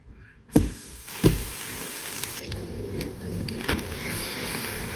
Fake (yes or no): yes